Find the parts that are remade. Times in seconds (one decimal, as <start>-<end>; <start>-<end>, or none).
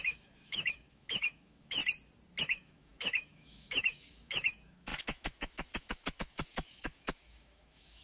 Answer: 0.0-1.8; 2.4-8.0